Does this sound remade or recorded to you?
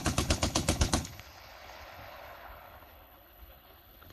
remade